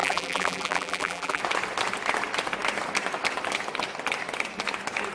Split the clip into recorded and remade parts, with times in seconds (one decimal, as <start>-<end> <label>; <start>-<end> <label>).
0.0-1.4 remade; 1.4-5.1 recorded